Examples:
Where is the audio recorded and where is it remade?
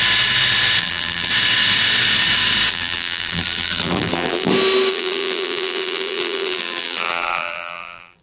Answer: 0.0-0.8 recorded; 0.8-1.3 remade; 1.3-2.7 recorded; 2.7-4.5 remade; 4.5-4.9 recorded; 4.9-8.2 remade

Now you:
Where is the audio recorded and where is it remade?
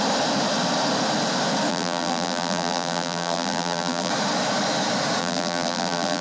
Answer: 0.0-1.7 recorded; 1.7-4.1 remade; 4.1-5.2 recorded; 5.2-6.2 remade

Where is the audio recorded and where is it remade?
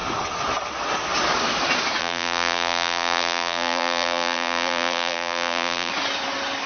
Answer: 0.0-2.0 recorded; 2.0-5.9 remade; 5.9-6.7 recorded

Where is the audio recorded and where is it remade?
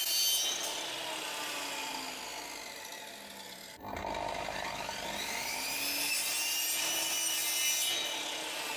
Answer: 0.0-8.8 recorded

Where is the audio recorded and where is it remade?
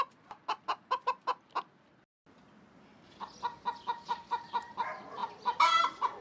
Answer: 0.0-6.2 recorded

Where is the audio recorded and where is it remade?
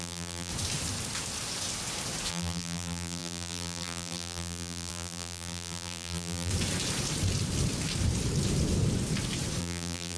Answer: 0.0-0.5 remade; 0.5-2.3 recorded; 2.3-6.5 remade; 6.5-9.6 recorded; 9.6-10.2 remade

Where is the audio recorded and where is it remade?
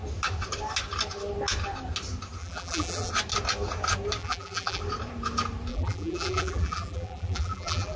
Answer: 0.0-2.4 recorded; 2.4-3.1 remade; 3.1-4.2 recorded; 4.2-4.8 remade; 4.8-5.7 recorded; 5.7-8.0 remade